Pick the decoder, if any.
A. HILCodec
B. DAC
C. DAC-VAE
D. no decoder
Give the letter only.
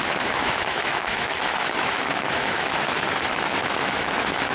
C